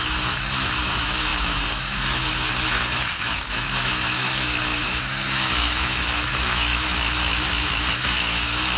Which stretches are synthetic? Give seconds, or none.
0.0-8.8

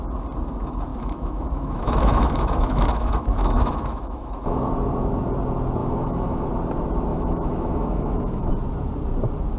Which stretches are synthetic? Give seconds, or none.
0.9-4.7; 5.8-6.5; 7.1-8.5

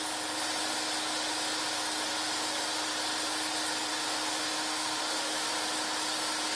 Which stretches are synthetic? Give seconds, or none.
3.9-5.5

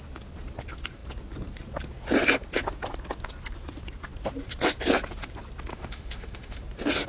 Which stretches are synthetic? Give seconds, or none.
5.7-6.6